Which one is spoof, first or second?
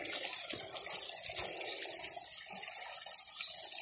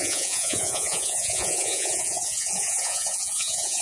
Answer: second